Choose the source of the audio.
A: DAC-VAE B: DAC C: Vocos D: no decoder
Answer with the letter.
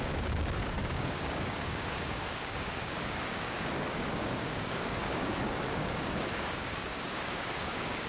B